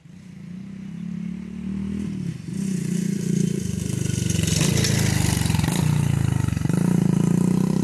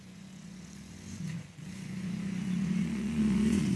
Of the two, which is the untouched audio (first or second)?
first